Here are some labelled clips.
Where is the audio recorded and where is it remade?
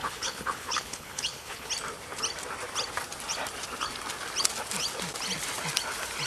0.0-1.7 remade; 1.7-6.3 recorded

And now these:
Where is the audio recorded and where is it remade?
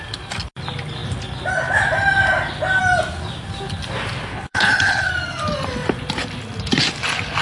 0.0-4.3 recorded; 4.3-5.1 remade; 5.1-7.4 recorded